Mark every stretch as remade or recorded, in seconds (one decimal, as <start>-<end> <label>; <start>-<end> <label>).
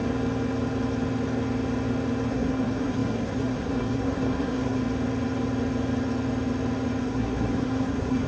0.0-2.3 recorded; 2.3-4.8 remade; 4.8-7.0 recorded; 7.0-8.3 remade